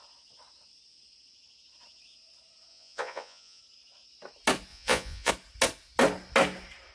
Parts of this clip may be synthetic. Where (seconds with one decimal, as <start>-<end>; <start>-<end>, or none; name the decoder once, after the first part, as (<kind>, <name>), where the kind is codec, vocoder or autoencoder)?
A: 2.7-3.6 (vocoder, Vocos); 4.7-5.3